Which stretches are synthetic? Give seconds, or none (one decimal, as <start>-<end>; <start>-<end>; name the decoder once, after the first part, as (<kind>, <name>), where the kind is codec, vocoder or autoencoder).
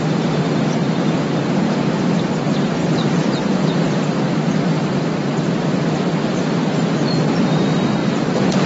2.8-7.3 (vocoder, BigVGAN v2); 8.0-8.7